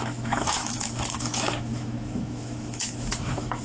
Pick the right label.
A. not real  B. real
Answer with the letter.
A